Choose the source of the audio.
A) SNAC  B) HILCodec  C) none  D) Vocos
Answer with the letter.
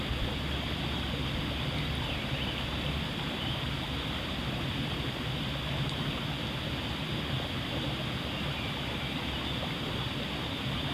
C